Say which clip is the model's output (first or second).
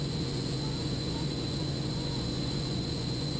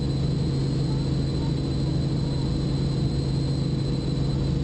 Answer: first